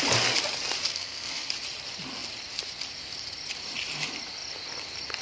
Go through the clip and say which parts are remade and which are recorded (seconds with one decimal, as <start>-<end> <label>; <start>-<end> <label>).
0.0-0.8 recorded; 0.8-1.5 remade; 1.5-5.2 recorded